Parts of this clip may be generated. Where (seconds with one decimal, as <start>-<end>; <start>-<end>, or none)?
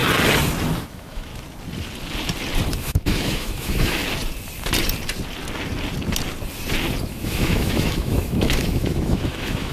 0.8-1.3; 2.8-4.0; 7.1-9.7